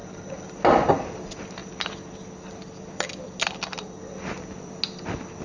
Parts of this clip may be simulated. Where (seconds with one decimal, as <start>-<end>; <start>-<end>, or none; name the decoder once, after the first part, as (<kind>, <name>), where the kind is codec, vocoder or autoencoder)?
none